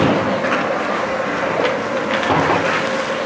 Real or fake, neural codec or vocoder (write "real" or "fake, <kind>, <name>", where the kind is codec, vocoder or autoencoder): real